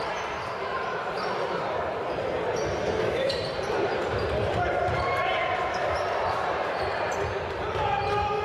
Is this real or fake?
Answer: fake